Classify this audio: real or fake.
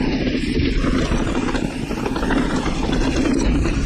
real